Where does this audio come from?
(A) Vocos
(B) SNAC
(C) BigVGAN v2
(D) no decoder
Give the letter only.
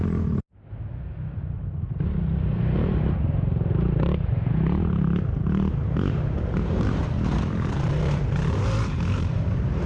C